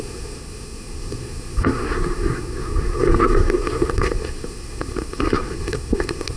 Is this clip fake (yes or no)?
yes